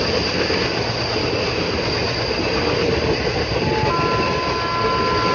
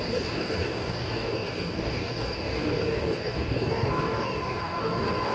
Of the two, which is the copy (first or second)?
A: second